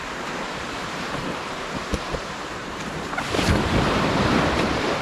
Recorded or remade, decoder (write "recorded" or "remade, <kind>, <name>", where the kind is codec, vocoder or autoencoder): remade, vocoder, BigVGAN v2